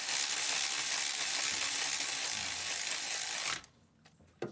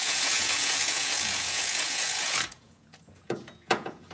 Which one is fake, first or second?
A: second